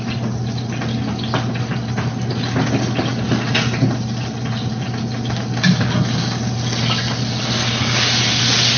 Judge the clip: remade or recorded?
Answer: recorded